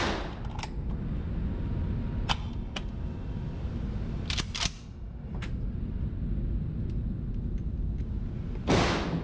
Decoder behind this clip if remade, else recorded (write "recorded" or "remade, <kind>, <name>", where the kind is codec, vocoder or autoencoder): recorded